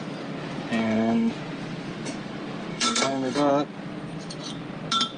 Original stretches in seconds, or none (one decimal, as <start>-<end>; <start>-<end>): 0.0-0.8; 1.3-2.7; 3.5-5.2